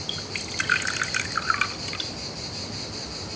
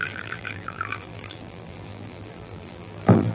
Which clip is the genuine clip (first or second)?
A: first